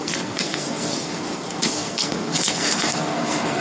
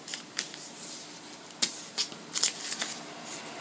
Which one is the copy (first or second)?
first